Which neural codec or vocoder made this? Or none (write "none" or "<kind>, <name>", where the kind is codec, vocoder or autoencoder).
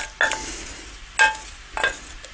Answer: none